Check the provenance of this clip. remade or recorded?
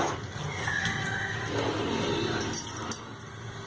recorded